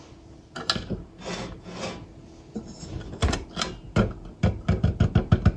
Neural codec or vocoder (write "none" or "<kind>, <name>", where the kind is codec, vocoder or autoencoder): none